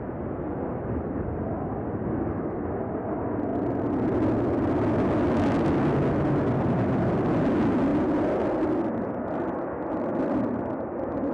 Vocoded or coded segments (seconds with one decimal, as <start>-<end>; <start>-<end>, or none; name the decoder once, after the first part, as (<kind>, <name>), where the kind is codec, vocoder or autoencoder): none